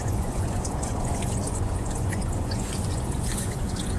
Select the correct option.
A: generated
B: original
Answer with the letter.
A